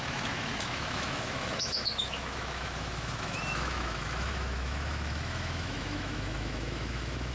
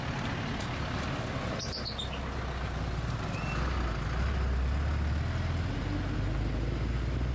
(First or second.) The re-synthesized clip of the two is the first